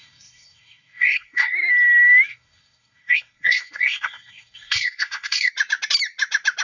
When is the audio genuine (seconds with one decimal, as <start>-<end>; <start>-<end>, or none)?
1.7-2.3; 5.5-6.6